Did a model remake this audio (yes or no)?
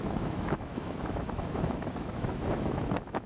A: yes